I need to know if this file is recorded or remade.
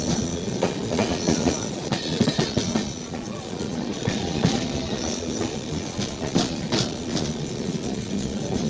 remade